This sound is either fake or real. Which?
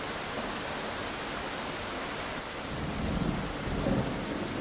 real